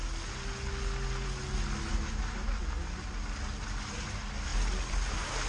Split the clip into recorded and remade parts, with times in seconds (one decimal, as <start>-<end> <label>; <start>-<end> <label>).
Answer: 0.0-1.9 recorded; 1.9-2.6 remade; 2.6-5.5 recorded